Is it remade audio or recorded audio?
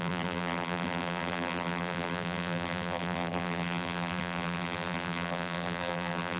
remade